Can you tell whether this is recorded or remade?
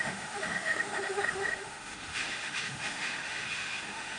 remade